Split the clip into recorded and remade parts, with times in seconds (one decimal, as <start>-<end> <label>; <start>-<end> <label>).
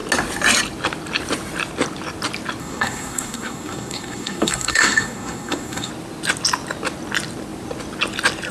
0.0-2.6 recorded; 2.6-5.9 remade; 5.9-8.5 recorded